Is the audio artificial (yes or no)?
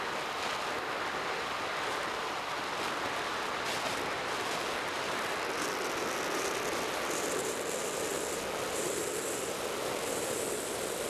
no